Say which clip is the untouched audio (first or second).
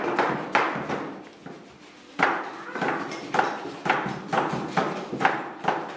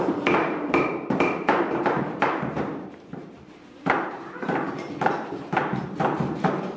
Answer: first